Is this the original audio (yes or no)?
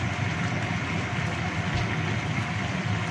yes